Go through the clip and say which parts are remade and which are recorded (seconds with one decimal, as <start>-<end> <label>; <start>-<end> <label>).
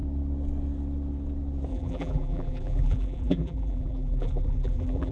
0.0-1.7 recorded; 1.7-5.1 remade